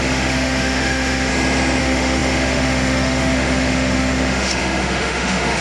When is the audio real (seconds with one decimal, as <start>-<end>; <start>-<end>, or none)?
1.3-1.8